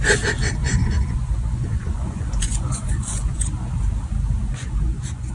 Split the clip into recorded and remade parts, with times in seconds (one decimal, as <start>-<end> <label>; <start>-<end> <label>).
0.0-0.6 recorded; 0.6-3.8 remade; 3.8-4.5 recorded; 4.5-5.3 remade